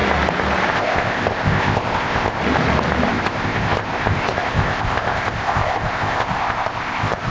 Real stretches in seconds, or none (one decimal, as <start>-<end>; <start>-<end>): 0.0-0.7; 2.4-3.1